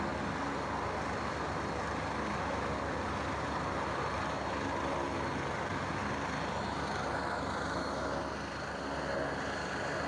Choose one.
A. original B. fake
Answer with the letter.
A